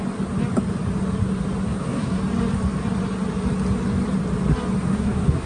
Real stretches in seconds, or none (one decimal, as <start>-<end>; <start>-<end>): 0.0-1.6; 2.2-4.9